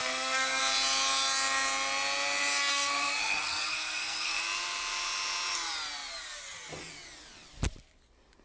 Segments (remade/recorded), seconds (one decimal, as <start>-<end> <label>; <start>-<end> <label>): 0.0-0.6 remade; 0.6-2.7 recorded; 2.7-4.4 remade; 4.4-8.4 recorded